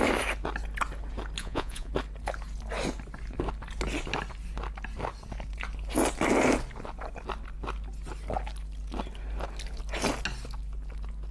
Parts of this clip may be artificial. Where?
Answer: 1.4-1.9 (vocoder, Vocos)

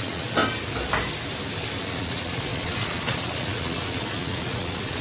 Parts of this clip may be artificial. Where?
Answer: 0.0-0.4 (vocoder, Vocos); 1.8-5.0

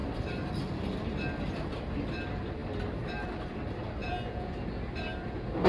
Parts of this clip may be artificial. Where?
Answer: 4.0-4.5 (vocoder, Vocos)

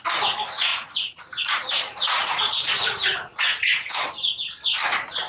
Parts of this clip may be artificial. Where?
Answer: 0.7-3.9 (vocoder, Vocos)

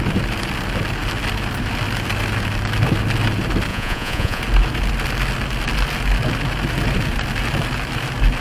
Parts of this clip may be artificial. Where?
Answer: 3.7-4.4 (vocoder, Vocos)

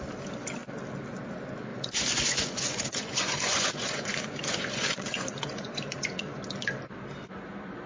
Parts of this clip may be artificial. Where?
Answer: 1.7-6.4 (vocoder, Vocos)